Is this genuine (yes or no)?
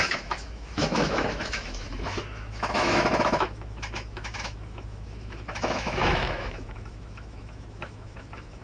no